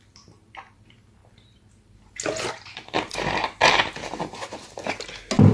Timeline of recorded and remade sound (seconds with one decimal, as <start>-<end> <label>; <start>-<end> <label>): 0.0-5.5 recorded